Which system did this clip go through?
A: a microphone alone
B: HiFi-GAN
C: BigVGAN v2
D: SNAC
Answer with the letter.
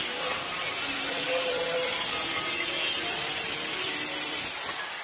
A